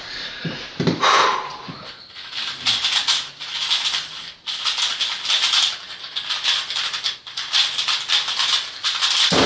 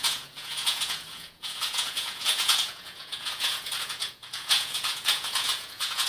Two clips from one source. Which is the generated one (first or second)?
second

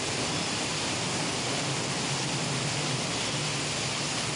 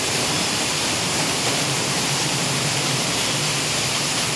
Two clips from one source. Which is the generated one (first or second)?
second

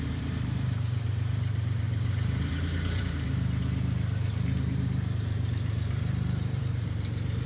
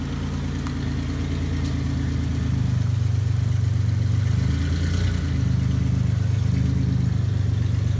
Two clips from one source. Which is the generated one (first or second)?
first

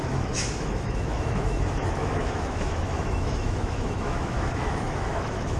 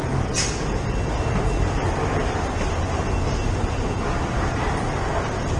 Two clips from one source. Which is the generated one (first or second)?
first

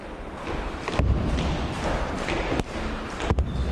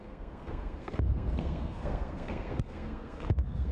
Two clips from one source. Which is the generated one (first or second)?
second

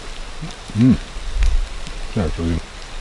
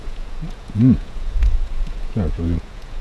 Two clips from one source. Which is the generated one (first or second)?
second